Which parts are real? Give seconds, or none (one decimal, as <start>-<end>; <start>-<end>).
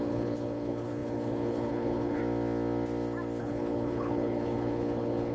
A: 2.2-3.4